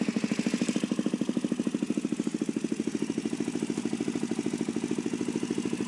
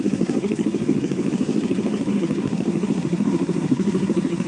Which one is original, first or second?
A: first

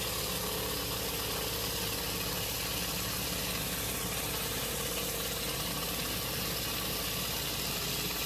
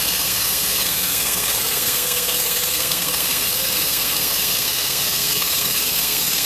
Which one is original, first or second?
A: first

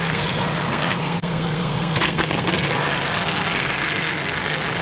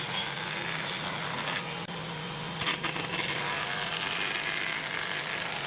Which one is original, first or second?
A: second